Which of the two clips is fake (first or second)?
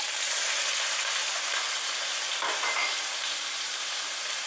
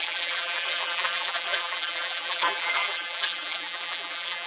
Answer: second